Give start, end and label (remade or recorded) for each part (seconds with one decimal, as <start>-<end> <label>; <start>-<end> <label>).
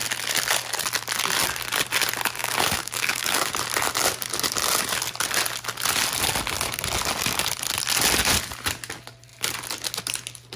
0.0-2.4 recorded; 2.4-3.5 remade; 3.5-10.6 recorded